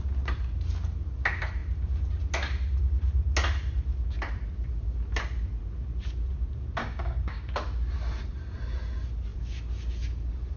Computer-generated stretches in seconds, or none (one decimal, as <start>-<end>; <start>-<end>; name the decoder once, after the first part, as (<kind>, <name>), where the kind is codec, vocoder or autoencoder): 6.8-7.5 (codec, DAC)